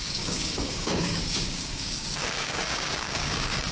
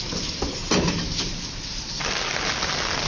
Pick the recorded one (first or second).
second